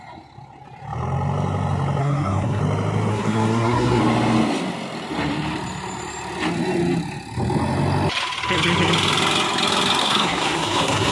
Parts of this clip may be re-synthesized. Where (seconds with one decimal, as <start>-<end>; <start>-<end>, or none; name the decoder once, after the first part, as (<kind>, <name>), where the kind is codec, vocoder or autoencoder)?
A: 2.0-2.6 (codec, SNAC); 3.1-4.0; 10.0-11.1